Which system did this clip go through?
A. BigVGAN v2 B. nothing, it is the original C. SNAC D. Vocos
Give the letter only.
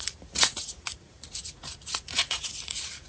D